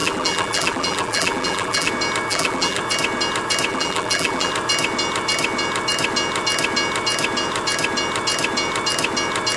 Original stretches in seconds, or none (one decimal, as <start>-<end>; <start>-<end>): 1.9-2.3; 2.8-3.7; 4.5-9.6